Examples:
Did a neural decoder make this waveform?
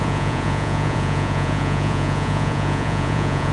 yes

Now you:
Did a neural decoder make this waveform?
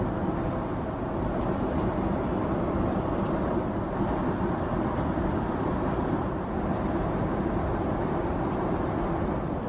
no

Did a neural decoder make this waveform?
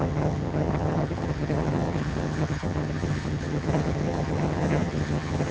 yes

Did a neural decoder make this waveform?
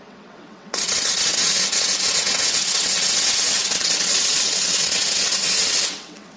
yes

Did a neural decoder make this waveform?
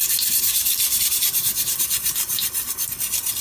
no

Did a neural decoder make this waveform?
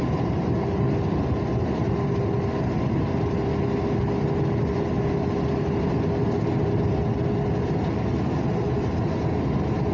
no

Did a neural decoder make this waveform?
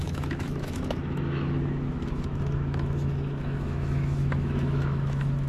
yes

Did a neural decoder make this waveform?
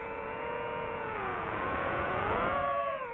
yes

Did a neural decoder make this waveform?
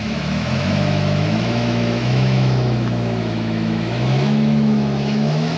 yes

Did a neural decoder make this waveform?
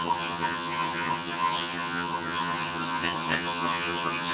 yes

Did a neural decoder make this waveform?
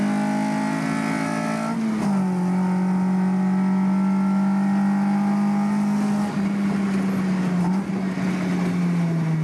no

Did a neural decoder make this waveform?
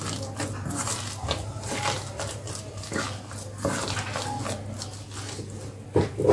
no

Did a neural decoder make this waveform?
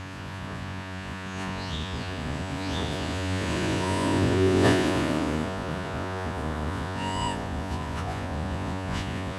yes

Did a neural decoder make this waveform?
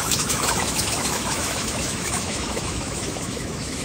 yes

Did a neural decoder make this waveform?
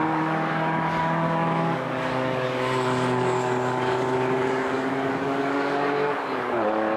yes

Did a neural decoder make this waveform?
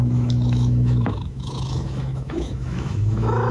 yes